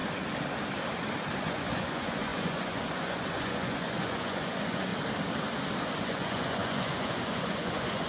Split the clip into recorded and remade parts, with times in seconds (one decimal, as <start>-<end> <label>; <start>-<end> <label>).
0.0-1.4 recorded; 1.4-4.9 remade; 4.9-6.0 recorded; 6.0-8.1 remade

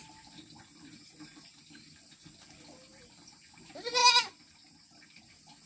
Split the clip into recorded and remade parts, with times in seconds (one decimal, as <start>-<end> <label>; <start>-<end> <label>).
0.0-5.7 recorded

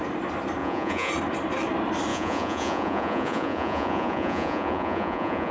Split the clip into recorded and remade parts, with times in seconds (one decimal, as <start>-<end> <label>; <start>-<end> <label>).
0.0-0.6 recorded; 0.6-1.1 remade; 1.1-2.1 recorded; 2.1-5.5 remade

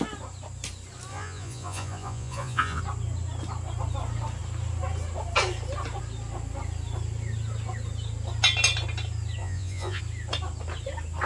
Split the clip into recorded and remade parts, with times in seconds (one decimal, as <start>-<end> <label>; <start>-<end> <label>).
0.0-1.1 recorded; 1.1-2.8 remade; 2.8-9.4 recorded; 9.4-10.0 remade; 10.0-11.3 recorded